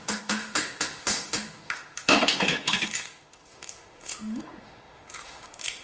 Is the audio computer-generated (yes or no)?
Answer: yes